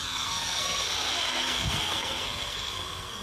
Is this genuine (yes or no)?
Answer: no